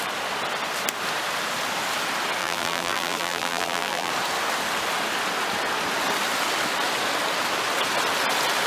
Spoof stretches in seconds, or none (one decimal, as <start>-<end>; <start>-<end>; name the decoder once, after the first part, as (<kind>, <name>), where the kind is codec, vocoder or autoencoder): 2.4-4.1 (vocoder, BigVGAN v2)